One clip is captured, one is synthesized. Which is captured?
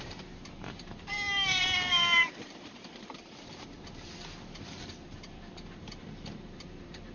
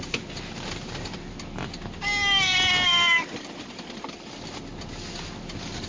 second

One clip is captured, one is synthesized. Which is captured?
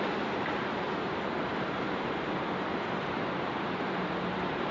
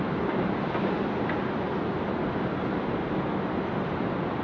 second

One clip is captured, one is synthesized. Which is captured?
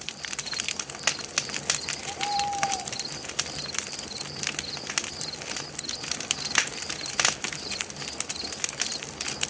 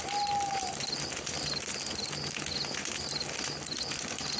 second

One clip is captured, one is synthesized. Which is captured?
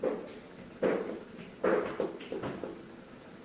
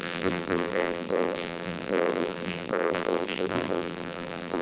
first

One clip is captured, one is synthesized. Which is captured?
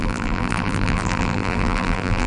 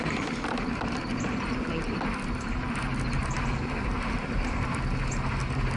second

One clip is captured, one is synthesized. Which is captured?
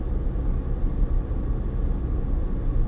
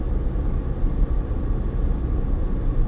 first